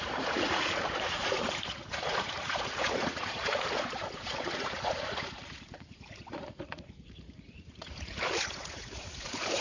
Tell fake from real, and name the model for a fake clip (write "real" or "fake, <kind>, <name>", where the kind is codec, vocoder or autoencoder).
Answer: fake, vocoder, Vocos